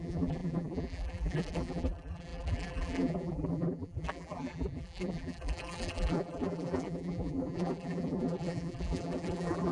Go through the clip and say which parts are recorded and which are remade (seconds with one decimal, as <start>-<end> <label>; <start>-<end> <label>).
0.0-9.7 remade